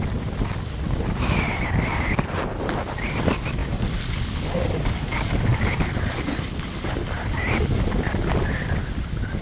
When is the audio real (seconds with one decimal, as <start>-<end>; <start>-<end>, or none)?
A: 0.0-9.4